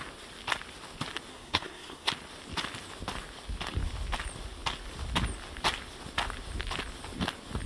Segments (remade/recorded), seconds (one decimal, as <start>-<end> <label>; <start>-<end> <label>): 0.0-1.3 recorded; 1.3-2.1 remade; 2.1-7.7 recorded